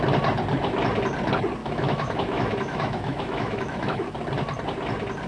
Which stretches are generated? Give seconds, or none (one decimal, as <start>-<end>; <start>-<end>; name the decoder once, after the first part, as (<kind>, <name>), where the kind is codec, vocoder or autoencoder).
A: 1.6-4.1 (autoencoder, DAC-VAE)